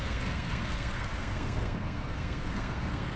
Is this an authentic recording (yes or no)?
no